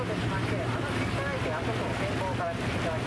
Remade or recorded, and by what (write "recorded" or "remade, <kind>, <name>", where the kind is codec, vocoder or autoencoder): recorded